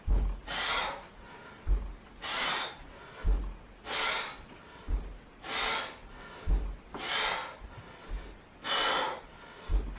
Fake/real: real